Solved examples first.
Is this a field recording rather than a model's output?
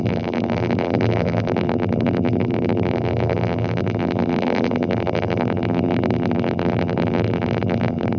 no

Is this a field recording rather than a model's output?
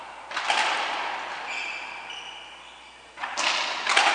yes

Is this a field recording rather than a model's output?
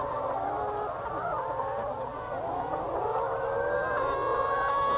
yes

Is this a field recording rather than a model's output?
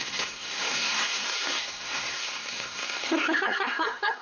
no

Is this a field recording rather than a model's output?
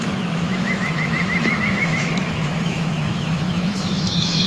no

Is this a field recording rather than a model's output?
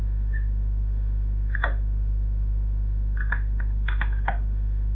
no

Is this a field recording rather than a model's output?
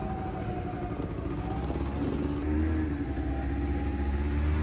yes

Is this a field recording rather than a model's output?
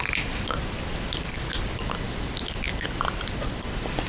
yes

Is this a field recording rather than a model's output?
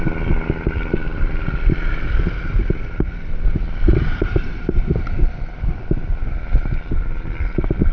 no